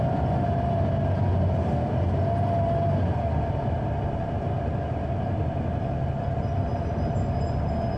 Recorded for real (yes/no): yes